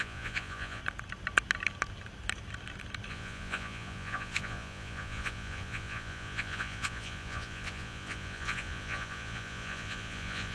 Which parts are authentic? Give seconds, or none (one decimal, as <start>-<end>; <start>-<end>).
0.8-3.1